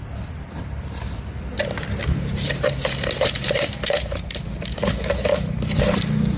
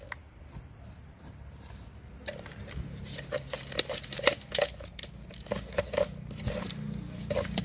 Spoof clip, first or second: first